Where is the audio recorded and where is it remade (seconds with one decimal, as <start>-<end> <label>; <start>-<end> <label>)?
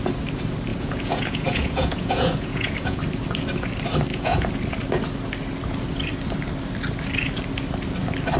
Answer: 0.0-0.7 recorded; 0.7-3.0 remade; 3.0-4.1 recorded; 4.1-4.6 remade; 4.6-8.4 recorded